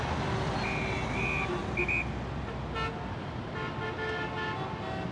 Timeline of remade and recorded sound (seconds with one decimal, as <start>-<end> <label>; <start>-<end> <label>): 0.0-5.1 recorded